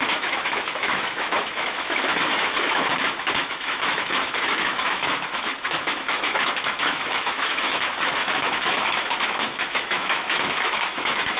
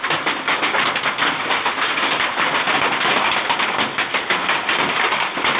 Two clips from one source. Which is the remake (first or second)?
first